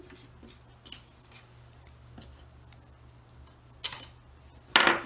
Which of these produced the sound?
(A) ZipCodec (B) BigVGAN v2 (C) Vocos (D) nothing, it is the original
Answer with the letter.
D